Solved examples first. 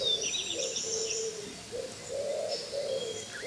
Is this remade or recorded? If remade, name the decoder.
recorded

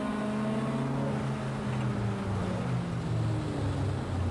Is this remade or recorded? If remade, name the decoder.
recorded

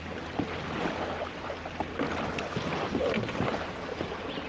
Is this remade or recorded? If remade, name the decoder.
recorded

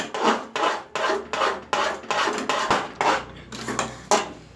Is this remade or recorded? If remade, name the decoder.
recorded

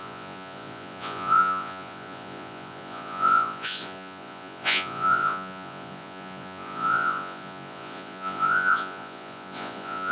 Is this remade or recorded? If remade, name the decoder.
remade, vocoder, Vocos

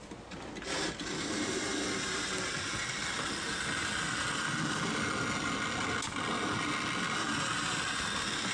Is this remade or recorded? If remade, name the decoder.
recorded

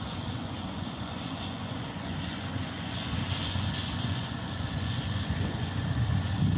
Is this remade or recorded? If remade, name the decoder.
remade, vocoder, Vocos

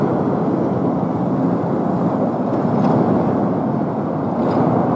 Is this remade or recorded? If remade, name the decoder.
recorded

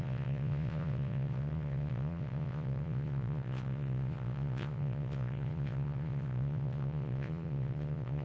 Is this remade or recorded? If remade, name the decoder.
remade, vocoder, Vocos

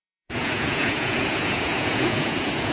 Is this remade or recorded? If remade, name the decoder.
remade, vocoder, Vocos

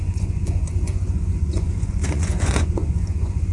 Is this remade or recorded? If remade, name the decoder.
remade, vocoder, Vocos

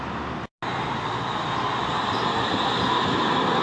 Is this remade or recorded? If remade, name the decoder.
recorded